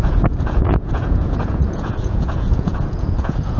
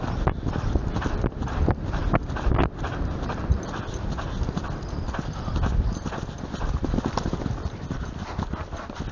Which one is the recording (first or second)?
second